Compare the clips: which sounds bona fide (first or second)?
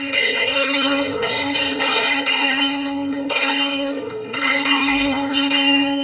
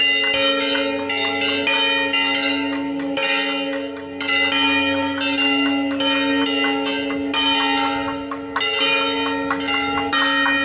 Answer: second